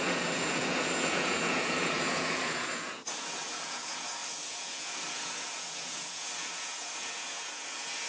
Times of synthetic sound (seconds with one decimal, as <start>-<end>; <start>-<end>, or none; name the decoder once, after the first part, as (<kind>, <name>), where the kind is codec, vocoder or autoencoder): 0.0-8.1 (vocoder, Vocos)